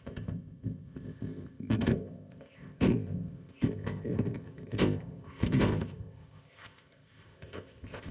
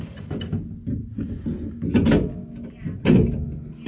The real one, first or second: second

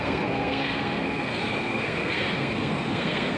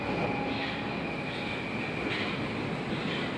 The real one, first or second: second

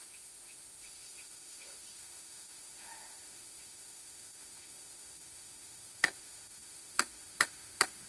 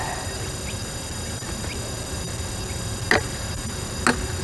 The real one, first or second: second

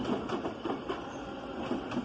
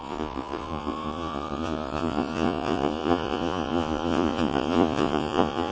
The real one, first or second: first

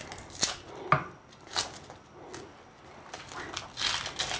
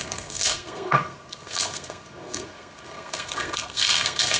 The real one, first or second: first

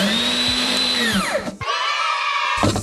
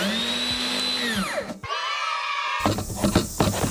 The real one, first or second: second